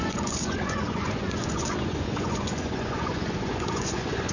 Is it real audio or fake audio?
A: fake